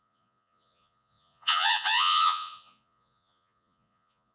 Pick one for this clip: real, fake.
fake